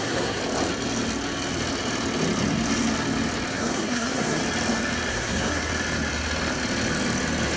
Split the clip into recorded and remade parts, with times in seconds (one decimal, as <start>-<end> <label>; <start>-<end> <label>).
0.0-0.4 remade; 0.4-3.5 recorded; 3.5-4.4 remade; 4.4-5.1 recorded; 5.1-5.7 remade; 5.7-7.6 recorded